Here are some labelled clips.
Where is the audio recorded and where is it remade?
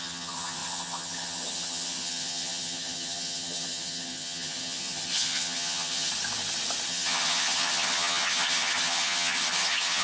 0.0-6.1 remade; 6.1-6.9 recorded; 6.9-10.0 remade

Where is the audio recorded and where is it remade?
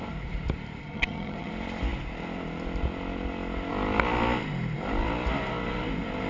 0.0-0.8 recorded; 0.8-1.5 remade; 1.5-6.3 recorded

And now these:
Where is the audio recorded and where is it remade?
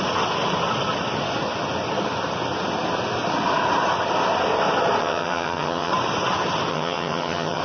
0.0-5.0 recorded; 5.0-5.9 remade; 5.9-6.7 recorded; 6.7-7.6 remade